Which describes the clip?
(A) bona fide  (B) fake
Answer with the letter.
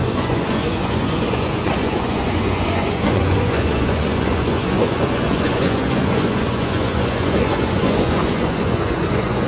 B